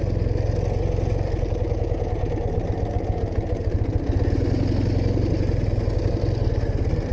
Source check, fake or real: real